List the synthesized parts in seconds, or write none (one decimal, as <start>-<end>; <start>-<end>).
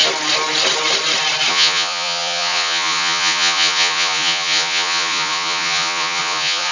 1.5-6.7